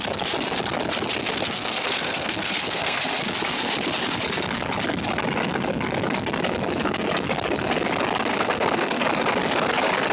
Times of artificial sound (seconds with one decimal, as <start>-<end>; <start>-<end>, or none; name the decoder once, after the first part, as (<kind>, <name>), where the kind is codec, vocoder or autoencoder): 1.2-3.0 (codec, SNAC); 8.3-9.0